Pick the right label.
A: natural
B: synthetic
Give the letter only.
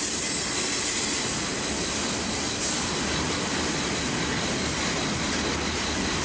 A